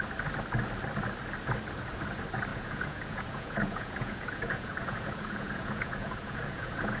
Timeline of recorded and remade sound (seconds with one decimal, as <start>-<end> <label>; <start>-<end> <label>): 0.0-2.5 recorded; 2.5-7.0 remade